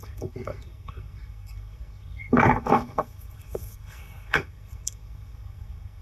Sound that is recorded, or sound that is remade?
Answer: remade